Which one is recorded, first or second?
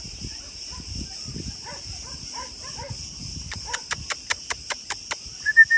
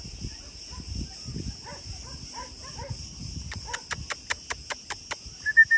second